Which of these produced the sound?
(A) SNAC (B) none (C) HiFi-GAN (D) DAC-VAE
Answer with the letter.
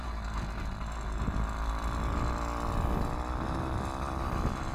B